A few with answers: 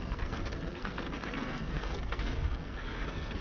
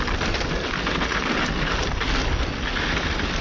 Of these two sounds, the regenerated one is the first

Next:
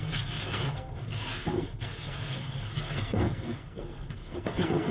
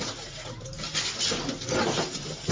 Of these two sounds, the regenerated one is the first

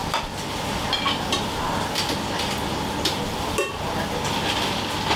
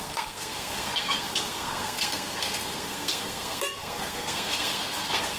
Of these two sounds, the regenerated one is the second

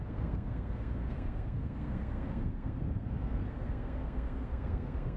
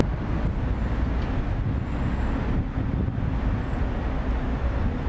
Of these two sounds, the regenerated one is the first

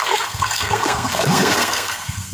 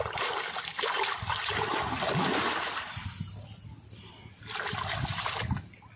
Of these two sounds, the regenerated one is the first